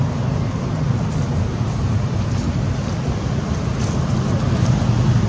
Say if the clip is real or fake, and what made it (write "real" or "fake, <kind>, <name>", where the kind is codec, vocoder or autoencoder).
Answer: real